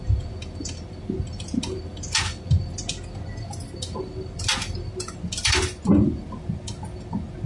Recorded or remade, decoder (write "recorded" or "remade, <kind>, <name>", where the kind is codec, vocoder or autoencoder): recorded